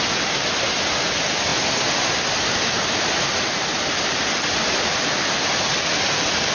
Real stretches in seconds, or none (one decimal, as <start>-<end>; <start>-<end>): 0.0-6.5